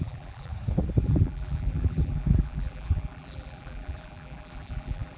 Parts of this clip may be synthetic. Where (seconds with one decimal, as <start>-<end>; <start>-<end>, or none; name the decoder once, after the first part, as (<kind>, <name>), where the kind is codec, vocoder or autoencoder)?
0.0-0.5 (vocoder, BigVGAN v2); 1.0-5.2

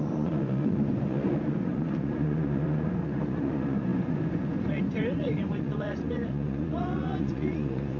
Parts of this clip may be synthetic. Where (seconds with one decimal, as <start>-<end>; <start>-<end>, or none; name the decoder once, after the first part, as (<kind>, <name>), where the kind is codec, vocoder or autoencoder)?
0.0-8.0 (vocoder, Vocos)

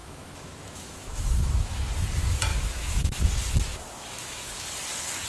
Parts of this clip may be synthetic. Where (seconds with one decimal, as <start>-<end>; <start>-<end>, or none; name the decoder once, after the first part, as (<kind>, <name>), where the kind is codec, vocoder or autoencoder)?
0.0-1.9 (autoencoder, DAC-VAE); 2.5-3.2; 3.7-4.7

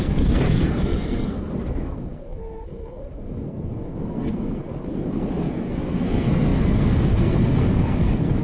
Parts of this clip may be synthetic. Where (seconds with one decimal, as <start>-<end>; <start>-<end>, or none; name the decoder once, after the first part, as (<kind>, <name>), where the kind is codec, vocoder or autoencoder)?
0.0-8.4 (codec, SNAC)

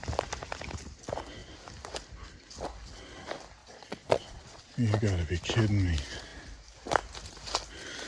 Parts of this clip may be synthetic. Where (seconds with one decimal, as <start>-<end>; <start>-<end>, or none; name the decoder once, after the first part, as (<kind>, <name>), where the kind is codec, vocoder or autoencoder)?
3.6-5.0 (vocoder, Vocos)

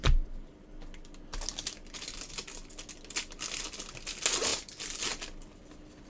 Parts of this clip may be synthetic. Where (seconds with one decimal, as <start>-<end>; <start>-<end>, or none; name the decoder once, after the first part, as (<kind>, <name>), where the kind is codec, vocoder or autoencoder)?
none